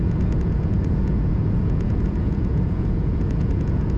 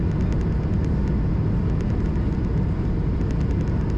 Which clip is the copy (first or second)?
first